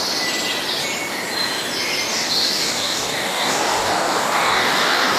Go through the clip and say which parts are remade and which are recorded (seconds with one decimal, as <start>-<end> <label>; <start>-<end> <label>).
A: 0.0-2.1 recorded; 2.1-5.2 remade